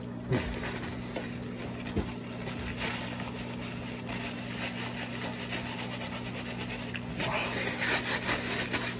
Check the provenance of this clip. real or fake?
real